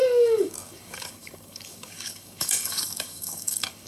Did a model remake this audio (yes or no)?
yes